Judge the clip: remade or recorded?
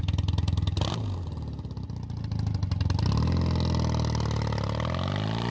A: recorded